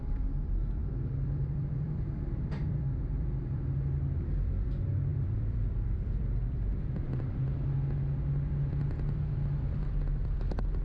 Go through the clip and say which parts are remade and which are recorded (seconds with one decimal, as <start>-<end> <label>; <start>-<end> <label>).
0.0-6.7 remade; 6.7-10.1 recorded; 10.1-10.8 remade